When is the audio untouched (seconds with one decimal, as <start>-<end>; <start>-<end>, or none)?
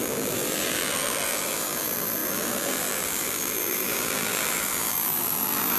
none